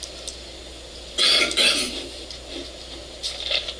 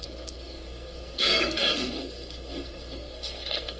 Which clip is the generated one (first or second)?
second